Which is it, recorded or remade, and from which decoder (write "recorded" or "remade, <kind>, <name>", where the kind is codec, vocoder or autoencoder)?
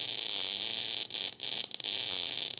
recorded